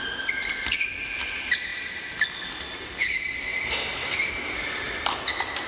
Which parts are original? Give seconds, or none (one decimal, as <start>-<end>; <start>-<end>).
0.0-5.7